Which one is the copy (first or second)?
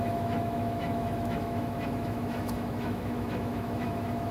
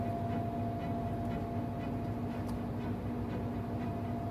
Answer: first